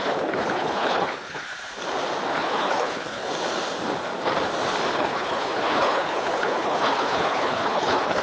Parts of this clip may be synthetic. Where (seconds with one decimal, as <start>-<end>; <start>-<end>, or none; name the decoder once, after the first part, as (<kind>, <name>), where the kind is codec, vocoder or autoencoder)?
0.0-1.5 (codec, HILCodec); 2.3-3.2; 4.9-8.2